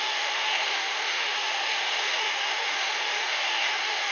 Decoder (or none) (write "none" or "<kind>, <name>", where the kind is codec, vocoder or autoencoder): autoencoder, DAC-VAE